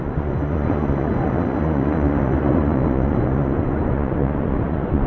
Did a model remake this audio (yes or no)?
yes